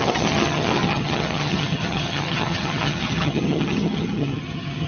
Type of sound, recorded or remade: remade